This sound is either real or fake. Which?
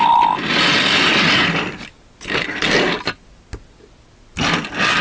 real